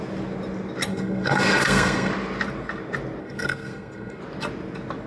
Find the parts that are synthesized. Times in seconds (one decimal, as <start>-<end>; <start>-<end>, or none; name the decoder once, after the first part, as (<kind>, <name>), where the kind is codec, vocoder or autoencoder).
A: 0.9-2.1 (codec, SNAC); 3.2-4.2